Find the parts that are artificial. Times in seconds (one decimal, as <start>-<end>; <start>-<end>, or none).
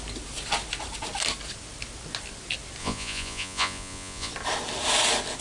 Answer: 2.8-4.3